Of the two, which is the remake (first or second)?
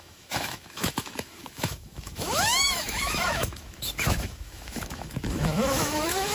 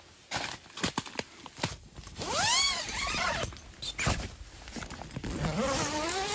first